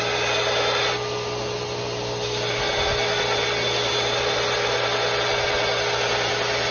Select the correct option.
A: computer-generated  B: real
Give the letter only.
B